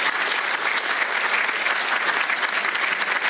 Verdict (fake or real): real